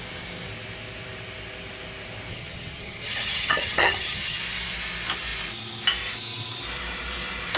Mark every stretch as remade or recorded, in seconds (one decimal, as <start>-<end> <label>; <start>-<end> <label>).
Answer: 0.0-2.3 recorded; 2.3-4.4 remade; 4.4-7.6 recorded